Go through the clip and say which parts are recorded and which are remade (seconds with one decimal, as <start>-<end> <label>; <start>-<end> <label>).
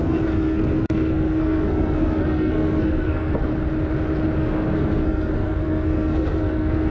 0.0-3.5 remade; 3.5-4.4 recorded; 4.4-6.9 remade